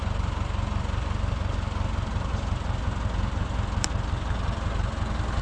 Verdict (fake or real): real